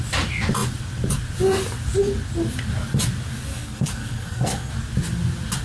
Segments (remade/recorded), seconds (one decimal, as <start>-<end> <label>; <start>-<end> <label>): 0.0-3.5 recorded; 3.5-4.7 remade; 4.7-5.6 recorded